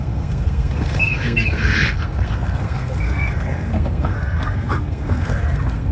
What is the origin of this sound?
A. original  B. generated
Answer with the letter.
B